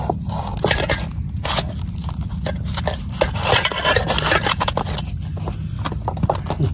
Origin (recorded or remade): recorded